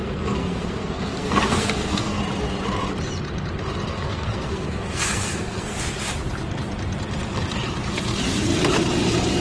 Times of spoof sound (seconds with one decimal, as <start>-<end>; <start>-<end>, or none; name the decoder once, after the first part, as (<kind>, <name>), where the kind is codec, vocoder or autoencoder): 0.0-2.2 (codec, SNAC); 3.9-5.8